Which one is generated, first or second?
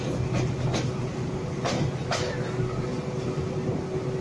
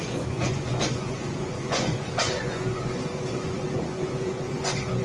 second